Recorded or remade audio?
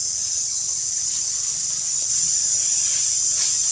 recorded